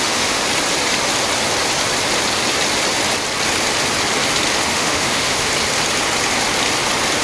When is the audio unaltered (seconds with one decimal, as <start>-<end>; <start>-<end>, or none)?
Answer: 0.4-4.7; 5.5-7.2